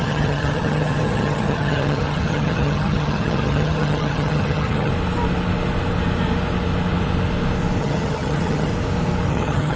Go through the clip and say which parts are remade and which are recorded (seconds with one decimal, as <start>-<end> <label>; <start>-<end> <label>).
0.0-4.9 remade; 4.9-7.8 recorded; 7.8-8.7 remade; 8.7-9.3 recorded; 9.3-9.8 remade